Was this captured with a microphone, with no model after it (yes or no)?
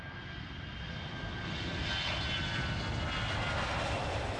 yes